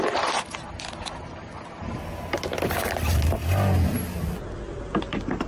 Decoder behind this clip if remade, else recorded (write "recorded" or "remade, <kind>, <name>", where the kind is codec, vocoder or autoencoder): recorded